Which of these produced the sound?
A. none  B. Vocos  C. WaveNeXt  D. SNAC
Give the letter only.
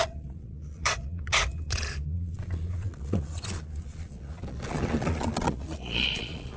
B